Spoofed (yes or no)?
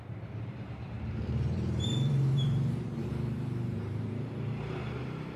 yes